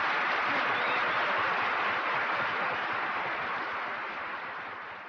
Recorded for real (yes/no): yes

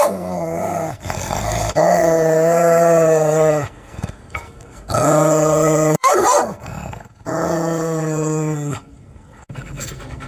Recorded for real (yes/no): no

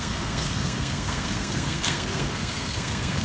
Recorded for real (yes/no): no